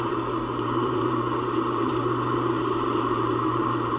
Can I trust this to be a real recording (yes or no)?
no